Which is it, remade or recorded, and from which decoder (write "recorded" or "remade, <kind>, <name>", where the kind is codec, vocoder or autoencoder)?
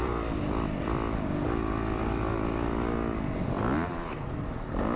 recorded